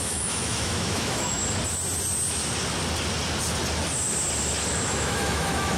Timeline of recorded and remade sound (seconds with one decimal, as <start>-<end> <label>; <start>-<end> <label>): 0.0-1.4 remade; 1.4-4.9 recorded; 4.9-5.8 remade